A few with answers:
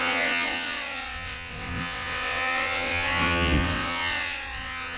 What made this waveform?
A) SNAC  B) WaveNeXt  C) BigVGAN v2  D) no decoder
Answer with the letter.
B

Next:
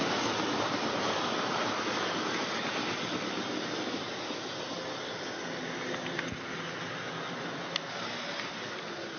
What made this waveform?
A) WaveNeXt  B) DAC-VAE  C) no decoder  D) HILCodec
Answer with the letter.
C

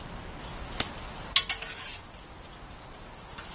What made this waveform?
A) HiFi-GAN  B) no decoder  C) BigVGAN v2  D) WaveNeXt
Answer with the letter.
B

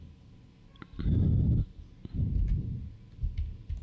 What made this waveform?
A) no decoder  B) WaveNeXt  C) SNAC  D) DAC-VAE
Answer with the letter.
A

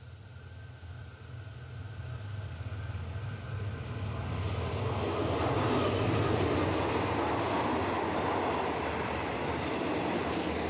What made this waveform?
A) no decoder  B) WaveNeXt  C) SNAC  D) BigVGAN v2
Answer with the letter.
A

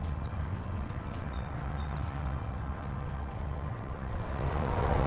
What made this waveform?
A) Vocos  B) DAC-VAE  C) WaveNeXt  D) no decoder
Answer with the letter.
C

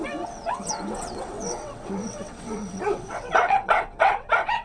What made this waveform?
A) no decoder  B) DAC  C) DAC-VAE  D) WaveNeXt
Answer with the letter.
D